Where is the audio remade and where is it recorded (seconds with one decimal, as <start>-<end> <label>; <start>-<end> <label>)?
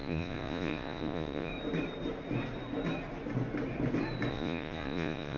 0.0-1.5 remade; 1.5-4.3 recorded; 4.3-5.4 remade